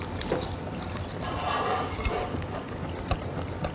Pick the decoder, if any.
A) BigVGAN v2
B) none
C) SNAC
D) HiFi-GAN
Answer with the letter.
B